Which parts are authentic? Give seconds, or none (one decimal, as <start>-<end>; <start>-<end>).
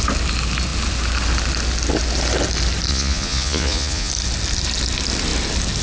0.0-2.9; 4.1-5.8